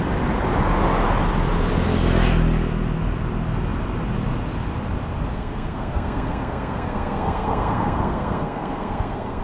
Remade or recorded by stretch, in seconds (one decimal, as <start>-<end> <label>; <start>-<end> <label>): 0.0-5.3 recorded; 5.3-9.4 remade